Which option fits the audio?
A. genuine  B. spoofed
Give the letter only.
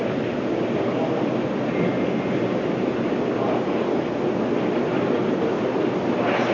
A